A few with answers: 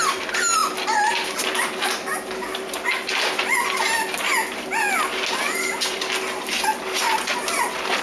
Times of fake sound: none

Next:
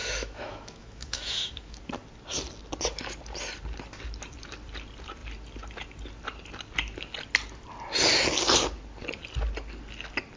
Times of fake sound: 0.0-1.8

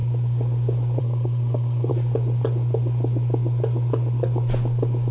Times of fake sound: 1.0-1.9

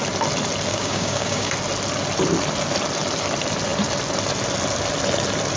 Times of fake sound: 0.7-1.5

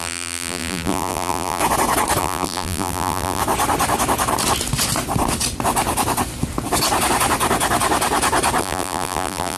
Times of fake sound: 0.0-1.6; 2.2-3.4; 8.6-9.6

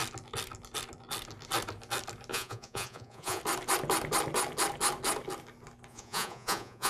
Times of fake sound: 2.3-3.4; 5.9-6.9

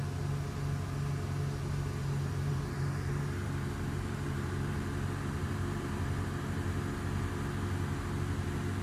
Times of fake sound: 2.0-6.8

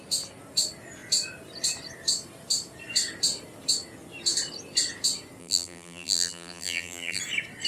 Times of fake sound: 5.4-7.2